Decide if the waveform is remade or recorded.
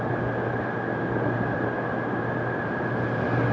recorded